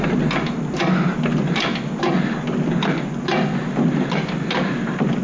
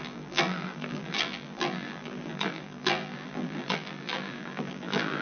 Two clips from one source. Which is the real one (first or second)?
first